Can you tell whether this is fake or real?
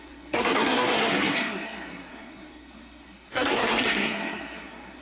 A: fake